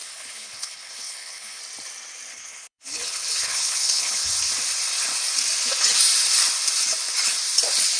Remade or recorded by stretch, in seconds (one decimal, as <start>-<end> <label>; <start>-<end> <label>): 0.0-1.6 remade; 1.6-2.3 recorded; 2.3-4.5 remade; 4.5-8.0 recorded